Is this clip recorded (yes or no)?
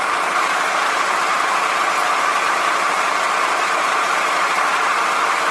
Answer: no